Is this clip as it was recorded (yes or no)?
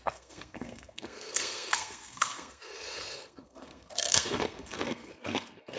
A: no